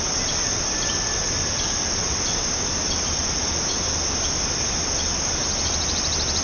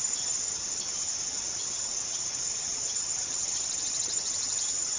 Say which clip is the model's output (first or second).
second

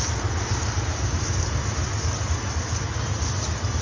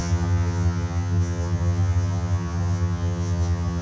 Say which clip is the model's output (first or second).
second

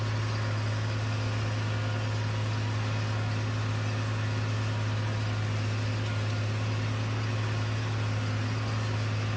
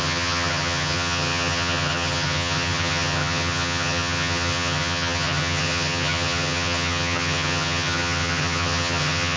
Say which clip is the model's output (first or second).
second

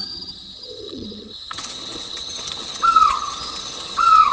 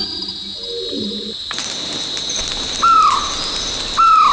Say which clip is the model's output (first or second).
first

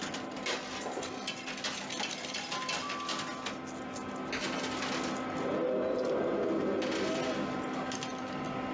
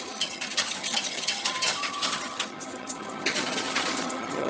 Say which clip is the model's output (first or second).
second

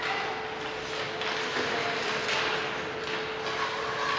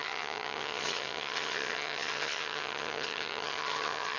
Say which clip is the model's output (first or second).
second